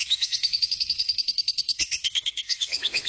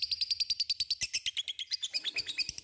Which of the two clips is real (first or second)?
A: second